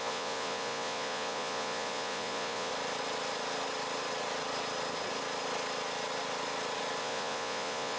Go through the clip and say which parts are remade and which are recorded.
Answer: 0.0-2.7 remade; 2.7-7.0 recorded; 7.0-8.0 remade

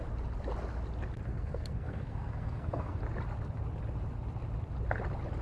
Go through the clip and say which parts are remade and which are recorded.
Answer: 0.0-1.3 recorded; 1.3-3.0 remade; 3.0-5.4 recorded

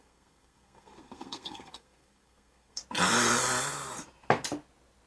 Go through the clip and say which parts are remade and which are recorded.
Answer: 0.0-2.8 remade; 2.8-5.1 recorded

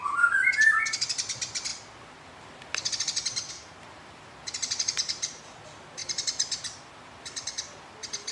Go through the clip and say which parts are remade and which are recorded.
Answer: 0.0-8.3 recorded

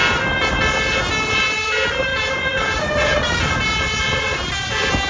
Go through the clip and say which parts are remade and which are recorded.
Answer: 0.0-2.1 recorded; 2.1-3.6 remade; 3.6-5.1 recorded

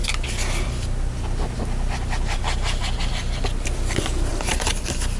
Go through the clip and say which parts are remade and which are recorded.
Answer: 0.0-5.2 recorded